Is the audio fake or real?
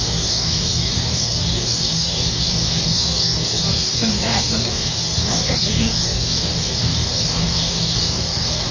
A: fake